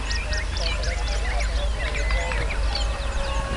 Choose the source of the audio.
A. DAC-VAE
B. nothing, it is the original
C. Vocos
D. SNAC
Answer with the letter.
B